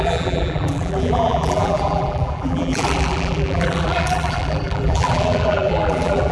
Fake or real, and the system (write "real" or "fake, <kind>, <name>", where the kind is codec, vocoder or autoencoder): fake, vocoder, BigVGAN v2